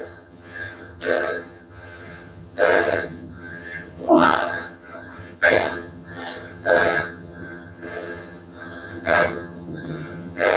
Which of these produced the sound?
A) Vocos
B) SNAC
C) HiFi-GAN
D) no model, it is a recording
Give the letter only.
C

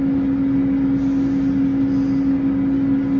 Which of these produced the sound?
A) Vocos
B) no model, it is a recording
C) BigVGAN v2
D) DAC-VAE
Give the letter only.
B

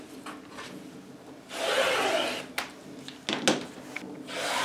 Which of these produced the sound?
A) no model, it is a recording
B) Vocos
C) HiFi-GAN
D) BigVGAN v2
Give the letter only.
A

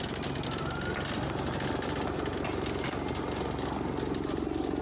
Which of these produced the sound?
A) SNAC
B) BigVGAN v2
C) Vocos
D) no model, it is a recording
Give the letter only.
D